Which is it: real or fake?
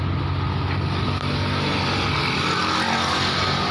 real